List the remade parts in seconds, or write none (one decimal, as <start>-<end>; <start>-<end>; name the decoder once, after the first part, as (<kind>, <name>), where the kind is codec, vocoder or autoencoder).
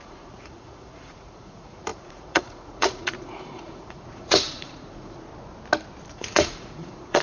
0.0-5.3 (vocoder, Vocos); 6.1-7.2